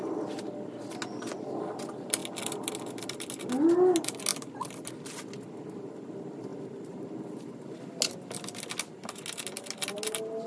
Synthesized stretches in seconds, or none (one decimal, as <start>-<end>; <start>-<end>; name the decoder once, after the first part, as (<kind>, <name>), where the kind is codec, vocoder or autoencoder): 2.2-2.7 (vocoder, BigVGAN v2); 4.3-4.9